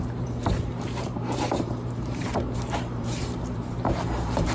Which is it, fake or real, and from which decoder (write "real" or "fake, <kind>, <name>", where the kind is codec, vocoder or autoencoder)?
fake, vocoder, BigVGAN v2